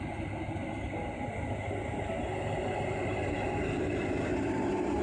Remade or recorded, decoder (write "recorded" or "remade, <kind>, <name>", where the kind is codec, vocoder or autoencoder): recorded